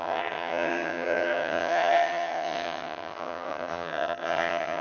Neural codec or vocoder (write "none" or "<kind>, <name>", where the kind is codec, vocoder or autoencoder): vocoder, HiFi-GAN